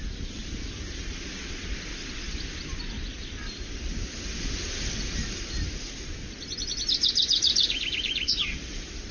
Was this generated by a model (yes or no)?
no